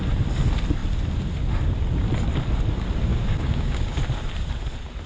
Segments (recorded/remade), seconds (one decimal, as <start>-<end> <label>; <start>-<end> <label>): 0.0-3.1 recorded; 3.1-4.0 remade; 4.0-5.1 recorded

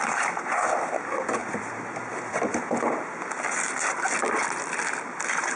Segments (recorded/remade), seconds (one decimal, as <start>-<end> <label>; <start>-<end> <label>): 0.0-5.6 remade

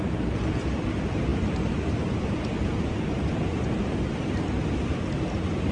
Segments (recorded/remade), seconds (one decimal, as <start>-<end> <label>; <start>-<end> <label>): 0.0-5.7 recorded

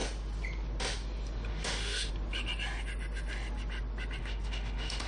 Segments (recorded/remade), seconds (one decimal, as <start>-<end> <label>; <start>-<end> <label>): 0.0-1.5 recorded; 1.5-2.1 remade; 2.1-4.2 recorded; 4.2-5.1 remade

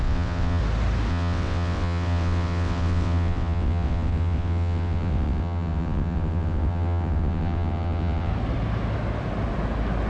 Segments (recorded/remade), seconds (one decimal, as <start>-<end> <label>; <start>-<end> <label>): 0.0-0.6 remade; 0.6-1.1 recorded; 1.1-8.3 remade; 8.3-10.1 recorded